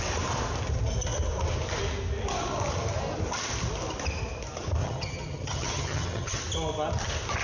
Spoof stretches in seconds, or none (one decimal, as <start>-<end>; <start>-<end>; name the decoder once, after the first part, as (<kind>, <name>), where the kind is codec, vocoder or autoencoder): 4.8-6.4 (vocoder, HiFi-GAN)

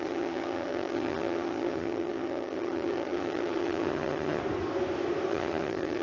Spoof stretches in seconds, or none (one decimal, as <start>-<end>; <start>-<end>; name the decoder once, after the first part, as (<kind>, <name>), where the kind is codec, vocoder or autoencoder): 0.0-4.4 (vocoder, HiFi-GAN); 5.3-6.0